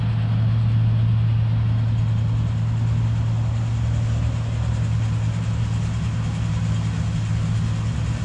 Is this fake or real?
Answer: real